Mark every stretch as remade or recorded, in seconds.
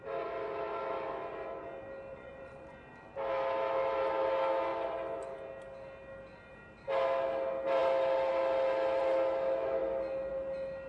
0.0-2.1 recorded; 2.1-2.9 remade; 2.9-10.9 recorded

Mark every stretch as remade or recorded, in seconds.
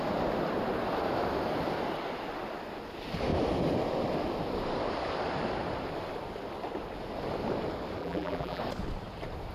0.0-8.0 recorded; 8.0-8.6 remade; 8.6-9.5 recorded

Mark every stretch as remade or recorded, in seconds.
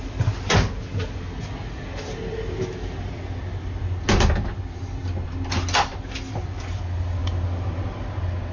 0.0-8.5 recorded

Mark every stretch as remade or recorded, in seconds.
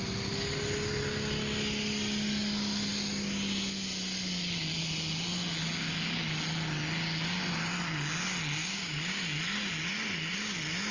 0.0-8.6 recorded; 8.6-9.2 remade; 9.2-10.9 recorded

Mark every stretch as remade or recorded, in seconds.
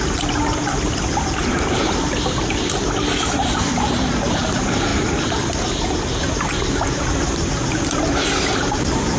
0.0-9.2 recorded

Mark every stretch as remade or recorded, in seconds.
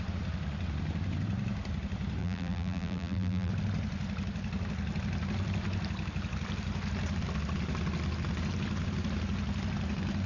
0.0-2.2 recorded; 2.2-3.5 remade; 3.5-10.3 recorded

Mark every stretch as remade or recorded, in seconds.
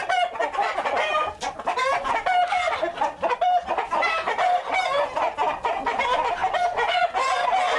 0.0-7.8 recorded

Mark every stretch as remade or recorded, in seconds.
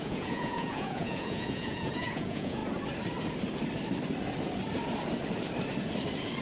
0.0-2.6 remade; 2.6-6.4 recorded